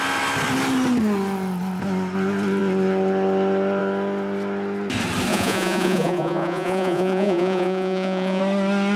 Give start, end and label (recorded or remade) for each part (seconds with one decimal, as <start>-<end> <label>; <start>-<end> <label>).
0.0-5.3 recorded; 5.3-8.4 remade; 8.4-9.0 recorded